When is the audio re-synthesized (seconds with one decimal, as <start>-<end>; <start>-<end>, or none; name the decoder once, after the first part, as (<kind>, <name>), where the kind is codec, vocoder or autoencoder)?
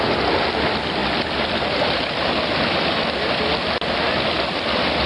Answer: 1.0-3.4 (vocoder, BigVGAN v2)